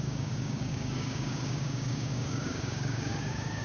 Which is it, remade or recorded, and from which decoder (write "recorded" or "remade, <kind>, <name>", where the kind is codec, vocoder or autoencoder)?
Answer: remade, codec, DAC